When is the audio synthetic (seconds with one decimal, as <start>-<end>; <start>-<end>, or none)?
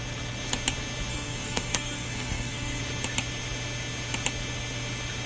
1.1-2.8